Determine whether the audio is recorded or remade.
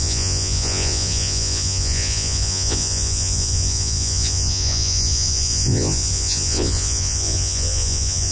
remade